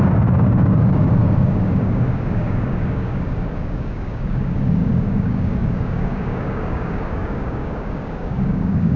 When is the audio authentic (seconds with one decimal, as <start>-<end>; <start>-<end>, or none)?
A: none